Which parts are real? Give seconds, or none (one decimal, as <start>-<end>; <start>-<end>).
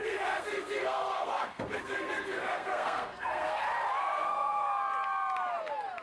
3.6-4.0; 4.8-6.0